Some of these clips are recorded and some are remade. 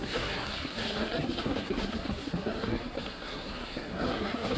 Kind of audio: remade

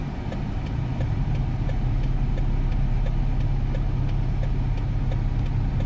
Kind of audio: recorded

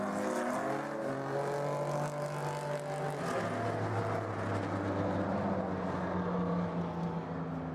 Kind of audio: recorded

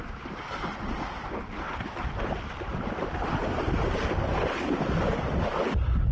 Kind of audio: recorded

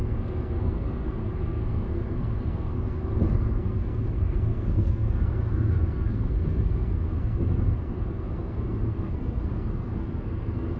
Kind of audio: remade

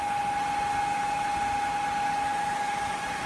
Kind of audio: recorded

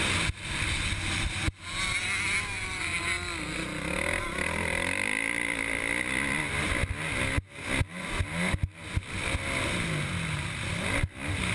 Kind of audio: recorded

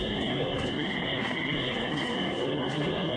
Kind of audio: remade